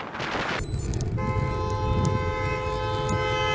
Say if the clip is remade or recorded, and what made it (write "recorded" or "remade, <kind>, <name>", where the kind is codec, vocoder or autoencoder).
recorded